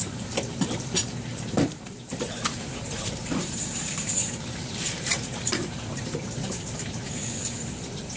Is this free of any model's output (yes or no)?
no